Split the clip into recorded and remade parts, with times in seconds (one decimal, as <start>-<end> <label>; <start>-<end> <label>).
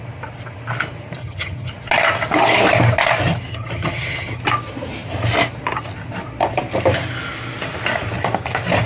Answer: 0.0-1.2 recorded; 1.2-1.7 remade; 1.7-3.5 recorded; 3.5-4.4 remade; 4.4-8.9 recorded